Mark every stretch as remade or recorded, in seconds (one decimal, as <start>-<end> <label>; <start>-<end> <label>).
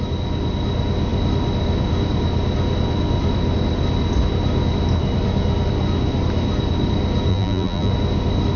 0.0-7.3 recorded; 7.3-7.9 remade; 7.9-8.6 recorded